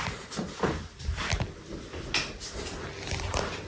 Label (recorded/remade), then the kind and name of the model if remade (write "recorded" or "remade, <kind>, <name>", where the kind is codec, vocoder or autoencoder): recorded